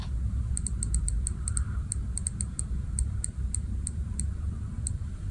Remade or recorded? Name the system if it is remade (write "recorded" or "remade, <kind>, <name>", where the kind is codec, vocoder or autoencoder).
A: remade, vocoder, BigVGAN v2